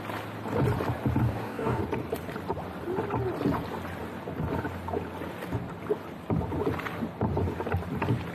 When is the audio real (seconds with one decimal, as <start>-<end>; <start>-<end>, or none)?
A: 0.0-1.2; 1.8-8.3